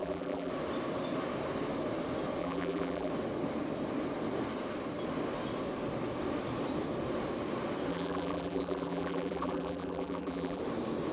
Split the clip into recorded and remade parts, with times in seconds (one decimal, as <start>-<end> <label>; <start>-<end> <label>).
0.0-0.5 remade; 0.5-2.4 recorded; 2.4-3.1 remade; 3.1-7.9 recorded; 7.9-10.6 remade; 10.6-11.1 recorded